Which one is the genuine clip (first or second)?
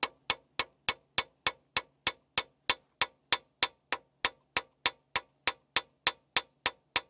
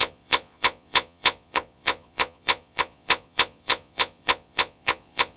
first